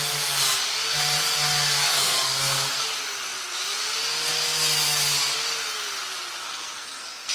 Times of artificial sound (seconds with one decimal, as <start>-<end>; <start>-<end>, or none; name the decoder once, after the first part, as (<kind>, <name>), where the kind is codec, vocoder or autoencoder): 1.8-2.8 (codec, SNAC); 6.4-7.3

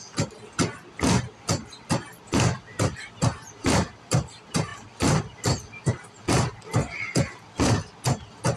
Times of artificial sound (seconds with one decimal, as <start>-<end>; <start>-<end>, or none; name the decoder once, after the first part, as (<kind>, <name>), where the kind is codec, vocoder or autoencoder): none

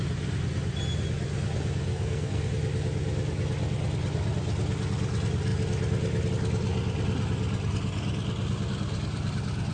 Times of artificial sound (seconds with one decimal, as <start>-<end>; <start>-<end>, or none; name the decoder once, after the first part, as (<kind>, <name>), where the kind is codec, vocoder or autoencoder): 1.9-2.5 (codec, SNAC)

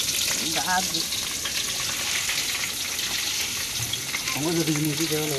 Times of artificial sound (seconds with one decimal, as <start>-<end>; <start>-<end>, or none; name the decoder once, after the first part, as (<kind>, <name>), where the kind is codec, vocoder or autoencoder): none

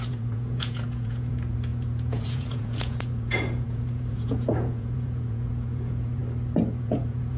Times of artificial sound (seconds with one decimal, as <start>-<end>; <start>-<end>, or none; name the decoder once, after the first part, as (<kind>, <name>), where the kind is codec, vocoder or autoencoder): 0.0-6.2 (vocoder, Vocos); 6.8-7.4